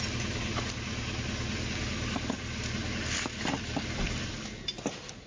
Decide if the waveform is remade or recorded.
recorded